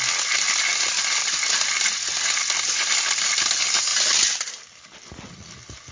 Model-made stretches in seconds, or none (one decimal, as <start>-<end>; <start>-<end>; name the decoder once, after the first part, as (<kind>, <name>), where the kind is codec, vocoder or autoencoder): none